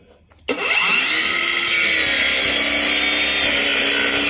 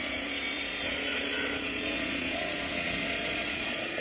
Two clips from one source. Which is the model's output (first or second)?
second